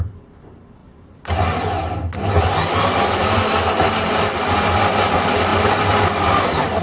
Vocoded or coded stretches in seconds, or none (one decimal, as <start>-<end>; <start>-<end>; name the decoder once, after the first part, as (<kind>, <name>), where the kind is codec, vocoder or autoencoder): none